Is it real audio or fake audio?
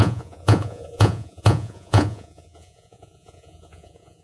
fake